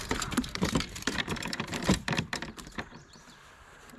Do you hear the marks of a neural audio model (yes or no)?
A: yes